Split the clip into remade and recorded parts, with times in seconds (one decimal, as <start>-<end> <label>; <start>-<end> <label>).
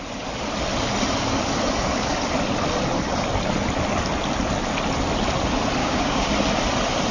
0.0-5.8 recorded; 5.8-6.3 remade; 6.3-7.1 recorded